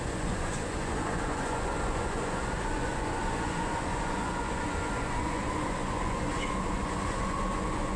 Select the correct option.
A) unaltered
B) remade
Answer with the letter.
B